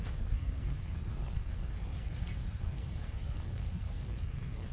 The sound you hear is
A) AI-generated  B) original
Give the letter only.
A